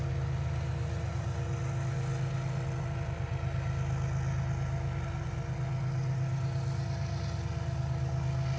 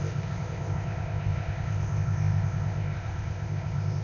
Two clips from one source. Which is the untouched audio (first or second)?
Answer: first